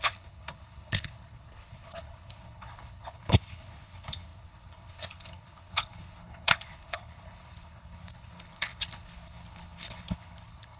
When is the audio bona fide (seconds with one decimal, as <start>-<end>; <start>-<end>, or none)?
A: none